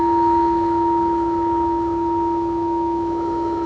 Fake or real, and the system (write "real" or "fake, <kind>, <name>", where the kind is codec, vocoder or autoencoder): fake, autoencoder, DAC-VAE